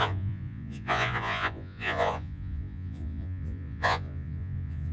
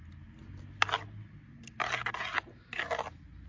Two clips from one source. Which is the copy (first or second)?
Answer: first